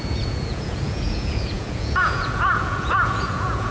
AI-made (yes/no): yes